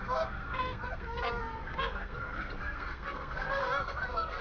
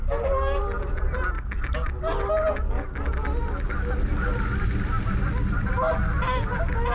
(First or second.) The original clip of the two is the second